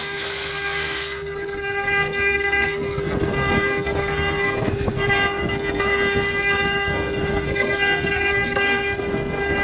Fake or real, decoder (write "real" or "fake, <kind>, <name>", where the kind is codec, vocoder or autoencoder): fake, codec, SNAC